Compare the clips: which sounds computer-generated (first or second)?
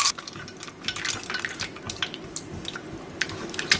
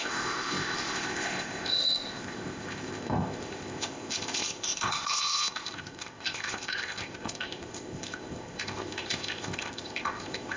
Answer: second